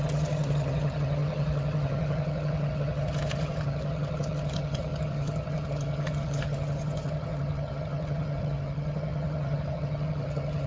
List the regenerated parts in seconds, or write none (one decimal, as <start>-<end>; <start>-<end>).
0.0-10.7